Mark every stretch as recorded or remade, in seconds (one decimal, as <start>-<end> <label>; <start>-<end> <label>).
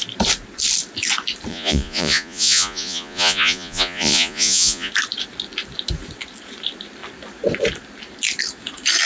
0.0-1.5 recorded; 1.5-4.9 remade; 4.9-9.1 recorded